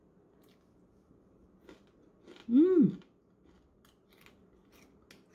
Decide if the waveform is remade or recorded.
recorded